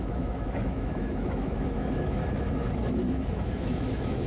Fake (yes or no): yes